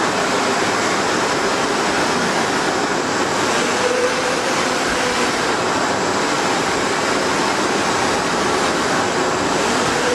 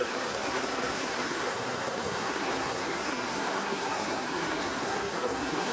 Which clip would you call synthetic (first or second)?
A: second